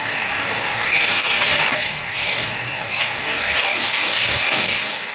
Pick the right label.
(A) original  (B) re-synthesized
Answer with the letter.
B